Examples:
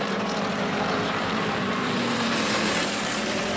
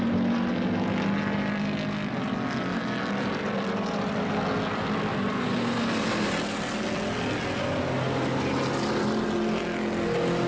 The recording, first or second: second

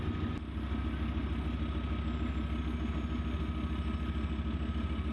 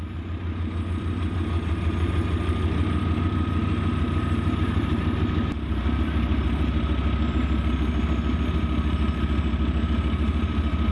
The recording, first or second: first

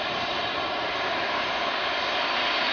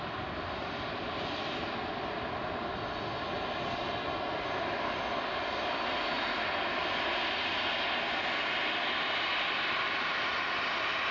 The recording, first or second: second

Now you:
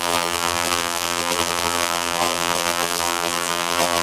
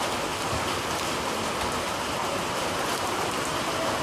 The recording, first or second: second